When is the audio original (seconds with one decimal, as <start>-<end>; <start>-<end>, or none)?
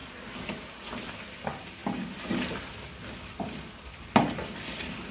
0.0-5.1